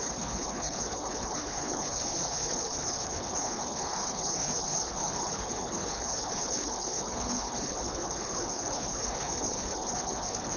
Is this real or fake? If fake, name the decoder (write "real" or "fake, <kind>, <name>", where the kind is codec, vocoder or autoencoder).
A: fake, codec, HILCodec